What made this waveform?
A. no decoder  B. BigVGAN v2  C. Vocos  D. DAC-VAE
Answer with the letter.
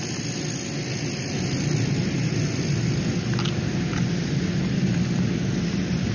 A